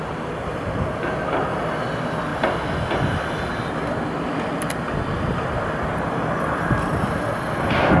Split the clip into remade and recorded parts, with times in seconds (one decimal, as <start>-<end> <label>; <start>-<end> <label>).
0.0-8.0 recorded